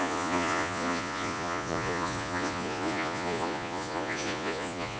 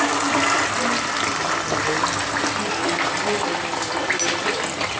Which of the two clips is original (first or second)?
second